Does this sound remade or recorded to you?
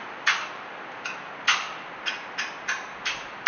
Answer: recorded